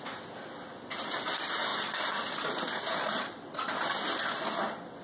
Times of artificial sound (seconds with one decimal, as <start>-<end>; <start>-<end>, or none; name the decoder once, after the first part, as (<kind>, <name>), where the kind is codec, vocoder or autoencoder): none